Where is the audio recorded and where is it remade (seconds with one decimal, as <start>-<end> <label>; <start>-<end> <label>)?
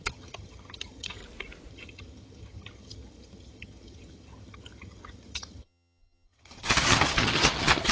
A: 0.0-1.2 remade; 1.2-1.7 recorded; 1.7-7.9 remade